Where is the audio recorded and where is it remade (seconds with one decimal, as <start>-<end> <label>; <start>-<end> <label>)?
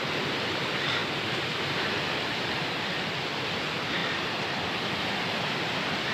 0.0-1.0 recorded; 1.0-3.6 remade; 3.6-4.0 recorded; 4.0-5.3 remade; 5.3-6.1 recorded